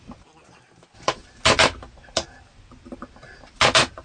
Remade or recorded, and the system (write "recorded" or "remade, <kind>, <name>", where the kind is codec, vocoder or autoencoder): recorded